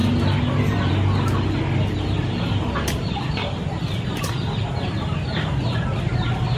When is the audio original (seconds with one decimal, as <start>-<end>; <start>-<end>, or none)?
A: 0.0-6.6